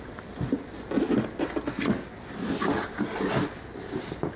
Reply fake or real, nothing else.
real